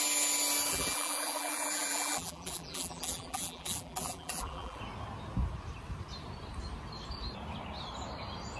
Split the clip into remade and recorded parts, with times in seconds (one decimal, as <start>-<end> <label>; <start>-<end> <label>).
0.0-0.7 recorded; 0.7-4.8 remade; 4.8-8.6 recorded